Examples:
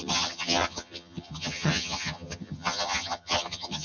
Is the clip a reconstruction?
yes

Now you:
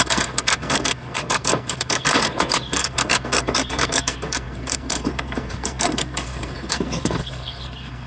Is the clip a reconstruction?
yes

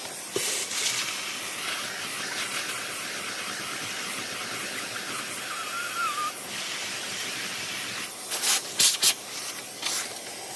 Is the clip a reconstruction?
no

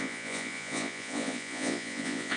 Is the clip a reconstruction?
yes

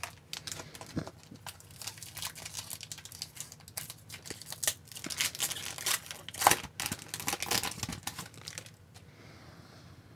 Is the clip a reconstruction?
no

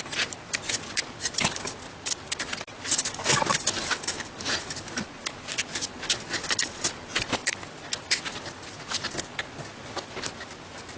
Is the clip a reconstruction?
no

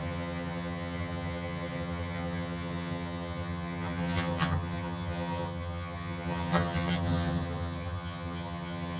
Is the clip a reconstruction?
yes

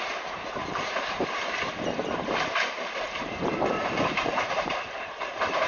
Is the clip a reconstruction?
yes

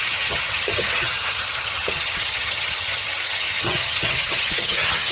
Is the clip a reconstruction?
yes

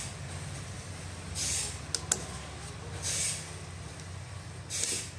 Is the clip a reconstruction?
no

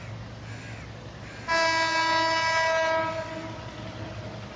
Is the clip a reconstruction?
no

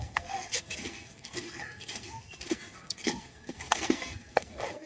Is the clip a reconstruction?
yes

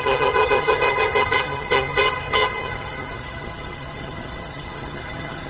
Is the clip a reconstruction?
yes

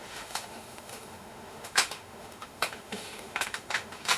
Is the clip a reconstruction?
yes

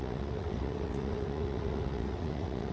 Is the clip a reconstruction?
yes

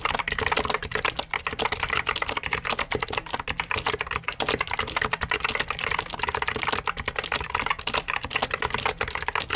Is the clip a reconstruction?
no